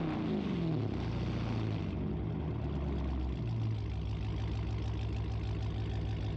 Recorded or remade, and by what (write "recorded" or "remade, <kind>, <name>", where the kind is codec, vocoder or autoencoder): recorded